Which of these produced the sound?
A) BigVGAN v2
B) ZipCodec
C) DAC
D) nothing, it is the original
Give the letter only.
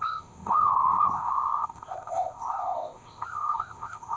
B